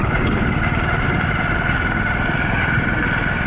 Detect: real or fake real